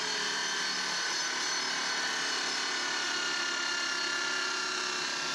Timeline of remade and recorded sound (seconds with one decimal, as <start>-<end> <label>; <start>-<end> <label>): 0.0-5.3 recorded